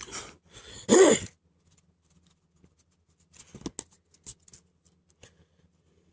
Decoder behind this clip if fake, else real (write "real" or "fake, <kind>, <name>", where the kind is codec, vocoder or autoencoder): real